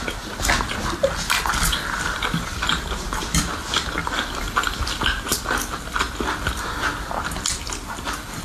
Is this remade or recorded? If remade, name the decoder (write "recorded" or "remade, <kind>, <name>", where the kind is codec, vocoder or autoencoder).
recorded